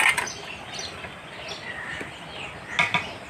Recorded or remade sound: recorded